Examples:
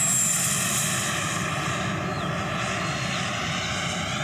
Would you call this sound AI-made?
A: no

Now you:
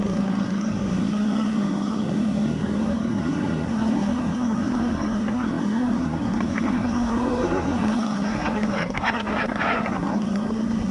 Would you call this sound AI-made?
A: yes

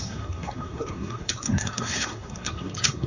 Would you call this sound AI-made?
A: yes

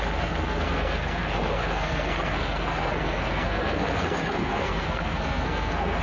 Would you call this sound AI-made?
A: yes